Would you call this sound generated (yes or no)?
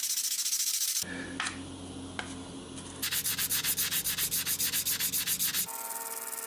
no